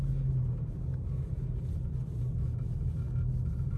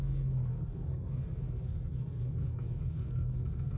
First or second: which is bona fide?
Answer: first